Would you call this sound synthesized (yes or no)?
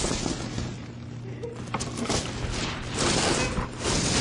no